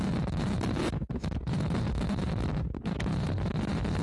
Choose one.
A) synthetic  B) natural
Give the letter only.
B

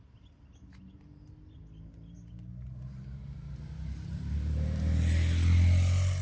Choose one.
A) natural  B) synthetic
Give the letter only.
A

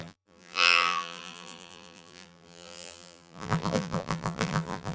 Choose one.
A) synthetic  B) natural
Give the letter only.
A